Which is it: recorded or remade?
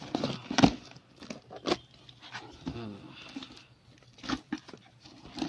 recorded